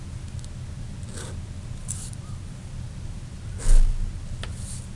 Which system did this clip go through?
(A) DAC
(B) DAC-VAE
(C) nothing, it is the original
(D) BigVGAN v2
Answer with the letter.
C